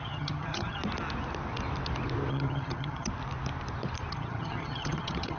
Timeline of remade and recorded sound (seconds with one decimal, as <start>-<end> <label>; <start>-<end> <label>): 0.0-0.8 remade; 0.8-2.3 recorded; 2.3-3.1 remade; 3.1-4.1 recorded; 4.1-5.4 remade